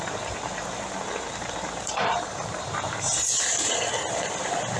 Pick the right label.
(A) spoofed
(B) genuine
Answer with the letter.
A